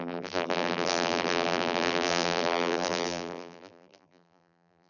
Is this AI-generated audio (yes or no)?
yes